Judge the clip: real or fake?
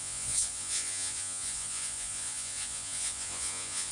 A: fake